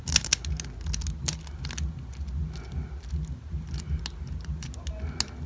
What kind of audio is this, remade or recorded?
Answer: recorded